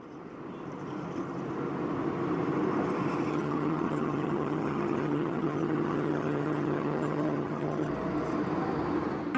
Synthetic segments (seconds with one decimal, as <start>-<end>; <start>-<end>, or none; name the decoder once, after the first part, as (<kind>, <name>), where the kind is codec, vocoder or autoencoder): 3.3-7.9 (vocoder, HiFi-GAN)